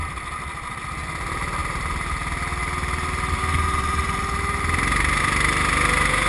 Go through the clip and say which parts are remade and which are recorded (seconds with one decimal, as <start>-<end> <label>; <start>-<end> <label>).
0.0-6.3 recorded